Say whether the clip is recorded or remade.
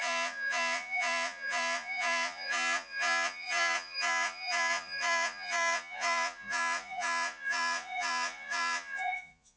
remade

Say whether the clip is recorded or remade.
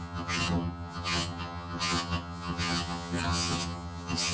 remade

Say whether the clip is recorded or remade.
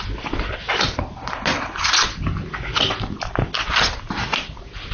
recorded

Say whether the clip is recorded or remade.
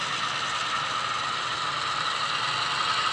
recorded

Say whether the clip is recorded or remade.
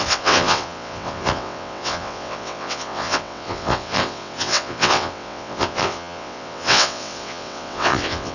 remade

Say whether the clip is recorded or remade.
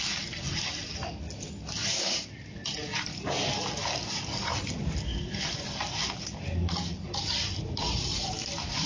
recorded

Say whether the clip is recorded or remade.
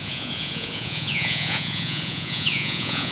remade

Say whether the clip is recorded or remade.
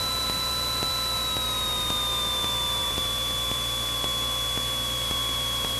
recorded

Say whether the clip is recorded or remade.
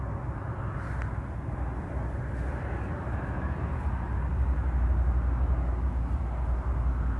recorded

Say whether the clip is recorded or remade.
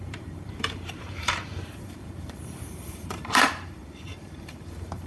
remade